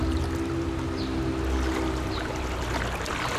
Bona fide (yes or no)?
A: yes